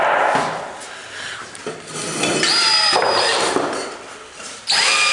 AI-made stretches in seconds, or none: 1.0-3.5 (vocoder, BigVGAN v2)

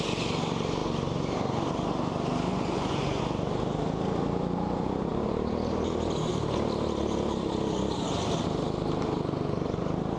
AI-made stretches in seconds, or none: 2.5-3.2 (vocoder, Vocos)